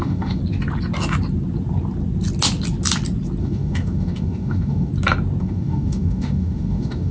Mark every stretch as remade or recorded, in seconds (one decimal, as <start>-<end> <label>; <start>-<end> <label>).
0.0-0.4 remade; 0.4-3.4 recorded; 3.4-4.9 remade; 4.9-5.4 recorded; 5.4-7.1 remade